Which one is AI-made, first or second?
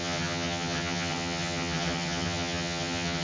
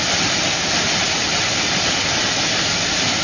first